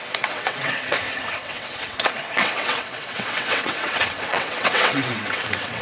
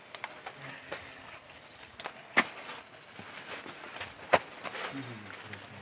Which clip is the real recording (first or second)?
second